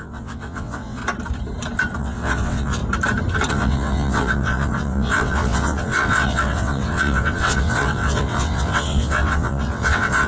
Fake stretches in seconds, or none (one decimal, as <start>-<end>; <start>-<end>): 0.0-1.0; 2.0-2.8; 3.5-10.3

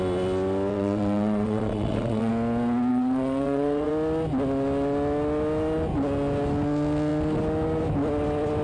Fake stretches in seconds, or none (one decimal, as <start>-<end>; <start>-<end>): 0.7-2.3; 2.9-3.9

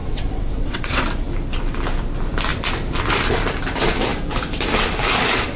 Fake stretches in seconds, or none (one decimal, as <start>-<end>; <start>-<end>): 0.0-1.0

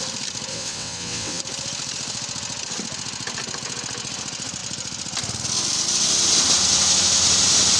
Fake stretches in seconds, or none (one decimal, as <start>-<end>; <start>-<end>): 0.5-1.4